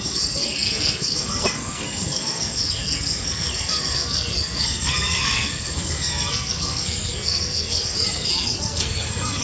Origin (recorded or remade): remade